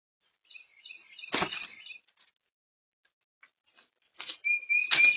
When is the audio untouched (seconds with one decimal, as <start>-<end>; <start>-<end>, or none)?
0.0-5.2